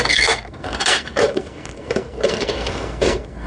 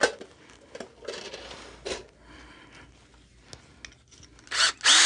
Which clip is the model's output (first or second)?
first